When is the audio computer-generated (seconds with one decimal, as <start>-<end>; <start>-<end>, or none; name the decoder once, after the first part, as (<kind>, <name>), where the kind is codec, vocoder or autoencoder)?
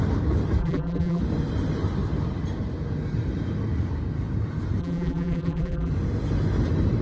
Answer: 0.6-1.2 (vocoder, BigVGAN v2); 4.8-5.9